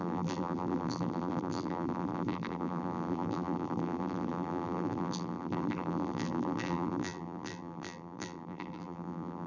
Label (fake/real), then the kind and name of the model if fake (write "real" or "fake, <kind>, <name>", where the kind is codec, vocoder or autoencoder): fake, vocoder, BigVGAN v2